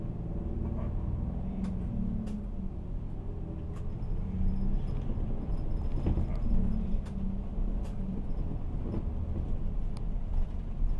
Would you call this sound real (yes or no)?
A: yes